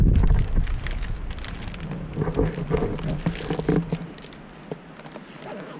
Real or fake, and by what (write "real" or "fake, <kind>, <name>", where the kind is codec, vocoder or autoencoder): real